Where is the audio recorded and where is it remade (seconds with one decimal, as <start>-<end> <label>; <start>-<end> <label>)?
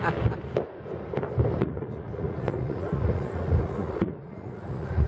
0.0-1.6 recorded; 1.6-5.1 remade